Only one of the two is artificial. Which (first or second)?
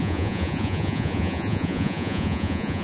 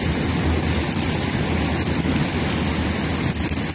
first